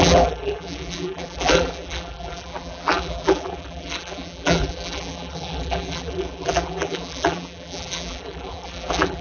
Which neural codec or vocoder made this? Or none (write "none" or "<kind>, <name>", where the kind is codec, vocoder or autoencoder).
vocoder, BigVGAN v2